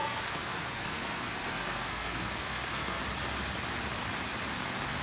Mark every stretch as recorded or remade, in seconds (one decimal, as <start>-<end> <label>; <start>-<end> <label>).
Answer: 0.0-3.0 remade; 3.0-5.0 recorded